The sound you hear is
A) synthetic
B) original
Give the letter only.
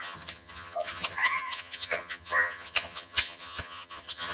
A